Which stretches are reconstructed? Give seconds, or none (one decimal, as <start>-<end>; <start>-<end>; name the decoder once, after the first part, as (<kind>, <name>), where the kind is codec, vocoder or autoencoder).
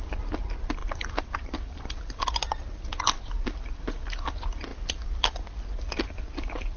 0.8-4.2 (vocoder, BigVGAN v2); 4.7-5.6